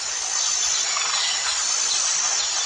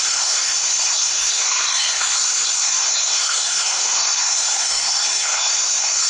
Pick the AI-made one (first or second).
second